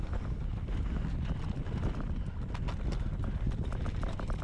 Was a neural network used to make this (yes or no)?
no